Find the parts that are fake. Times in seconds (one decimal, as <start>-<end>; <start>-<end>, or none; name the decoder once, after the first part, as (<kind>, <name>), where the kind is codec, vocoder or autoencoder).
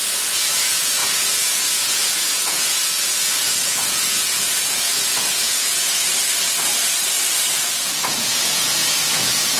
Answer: 0.0-6.1 (vocoder, Vocos); 7.5-9.6